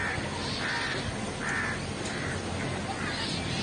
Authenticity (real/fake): real